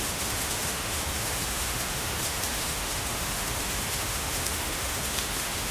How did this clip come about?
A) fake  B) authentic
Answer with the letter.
A